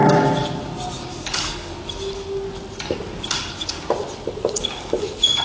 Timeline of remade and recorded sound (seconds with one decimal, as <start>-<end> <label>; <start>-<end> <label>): 0.0-1.1 recorded; 1.1-1.7 remade; 1.7-4.4 recorded; 4.4-5.4 remade